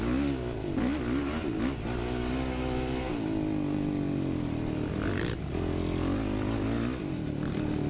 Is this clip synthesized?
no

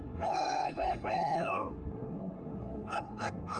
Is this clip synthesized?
yes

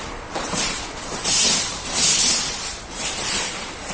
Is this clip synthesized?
yes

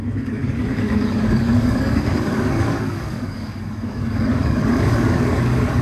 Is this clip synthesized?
yes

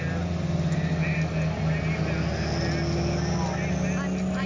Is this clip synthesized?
no